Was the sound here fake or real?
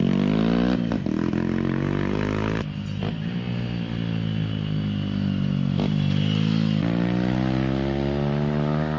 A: real